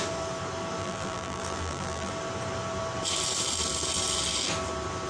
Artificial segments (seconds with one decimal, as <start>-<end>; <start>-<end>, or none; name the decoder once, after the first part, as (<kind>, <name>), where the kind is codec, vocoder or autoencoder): 0.8-2.1 (vocoder, BigVGAN v2)